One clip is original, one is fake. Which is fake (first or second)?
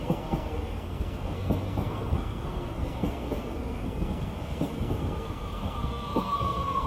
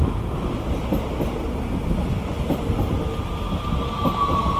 first